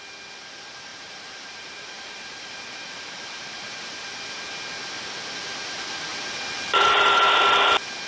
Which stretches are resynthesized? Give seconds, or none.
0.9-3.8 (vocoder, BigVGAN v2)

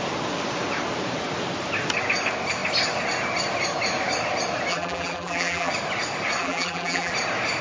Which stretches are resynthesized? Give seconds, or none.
4.7-5.7 (vocoder, BigVGAN v2); 6.4-7.1

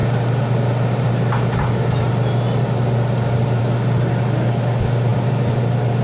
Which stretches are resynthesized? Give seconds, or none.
none